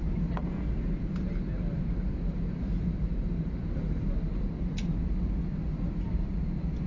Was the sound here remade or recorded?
recorded